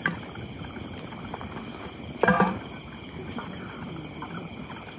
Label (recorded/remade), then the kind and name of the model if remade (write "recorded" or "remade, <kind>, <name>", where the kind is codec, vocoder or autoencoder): recorded